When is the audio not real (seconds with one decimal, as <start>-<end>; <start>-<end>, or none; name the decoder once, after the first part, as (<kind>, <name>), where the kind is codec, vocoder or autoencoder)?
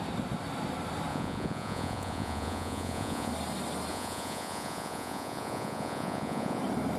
1.1-3.3 (vocoder, Vocos); 3.9-6.6